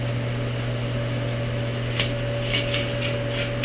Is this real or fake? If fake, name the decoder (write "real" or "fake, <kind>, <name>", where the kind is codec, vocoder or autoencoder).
real